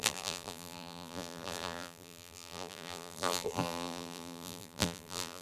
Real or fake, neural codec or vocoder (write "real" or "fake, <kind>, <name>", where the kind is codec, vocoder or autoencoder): fake, vocoder, BigVGAN v2